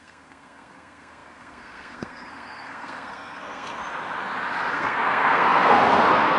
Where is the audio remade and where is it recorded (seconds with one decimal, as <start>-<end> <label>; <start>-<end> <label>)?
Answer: 0.0-3.8 remade; 3.8-4.7 recorded; 4.7-6.4 remade